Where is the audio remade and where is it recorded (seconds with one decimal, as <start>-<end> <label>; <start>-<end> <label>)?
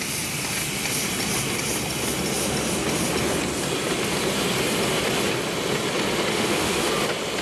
0.0-6.3 recorded; 6.3-6.9 remade; 6.9-7.4 recorded